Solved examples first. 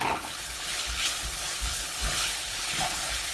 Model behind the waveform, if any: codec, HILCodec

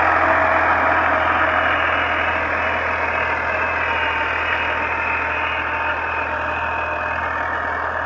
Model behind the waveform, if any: none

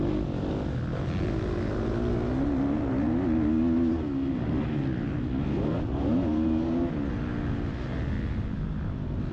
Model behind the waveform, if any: none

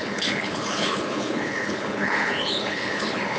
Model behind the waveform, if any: codec, HILCodec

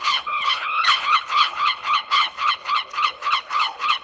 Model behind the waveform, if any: codec, HILCodec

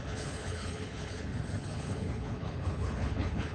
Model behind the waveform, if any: codec, HILCodec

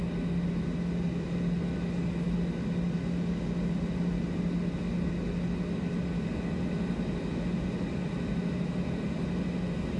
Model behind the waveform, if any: none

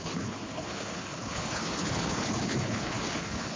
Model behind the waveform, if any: codec, HILCodec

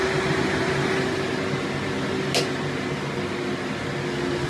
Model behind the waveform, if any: none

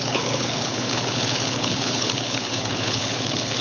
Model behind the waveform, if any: codec, HILCodec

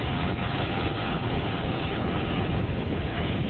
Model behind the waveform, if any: codec, HILCodec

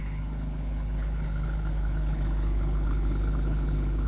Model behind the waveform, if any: codec, HILCodec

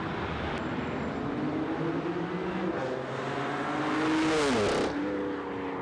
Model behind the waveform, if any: none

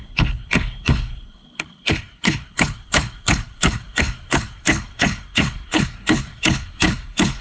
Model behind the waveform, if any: codec, HILCodec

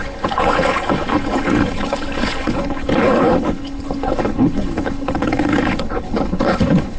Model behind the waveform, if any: codec, HILCodec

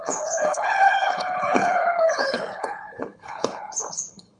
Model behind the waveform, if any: codec, HILCodec